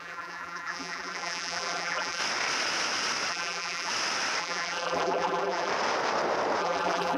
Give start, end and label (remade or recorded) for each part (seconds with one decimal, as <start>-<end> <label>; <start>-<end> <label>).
0.0-2.2 remade; 2.2-3.3 recorded; 3.3-3.9 remade; 3.9-4.4 recorded; 4.4-5.7 remade; 5.7-6.6 recorded; 6.6-7.2 remade